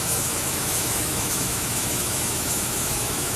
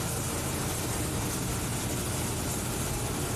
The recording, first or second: second